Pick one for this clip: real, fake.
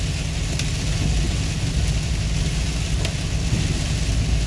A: real